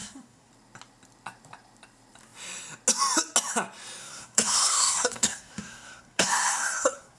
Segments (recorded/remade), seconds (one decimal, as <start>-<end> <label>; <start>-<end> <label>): 0.0-0.5 remade; 0.5-4.0 recorded; 4.0-7.2 remade